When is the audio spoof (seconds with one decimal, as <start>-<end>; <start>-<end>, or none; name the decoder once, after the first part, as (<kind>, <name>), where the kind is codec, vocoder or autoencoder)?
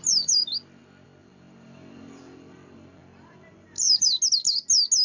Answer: 0.0-0.5 (vocoder, BigVGAN v2); 1.2-4.2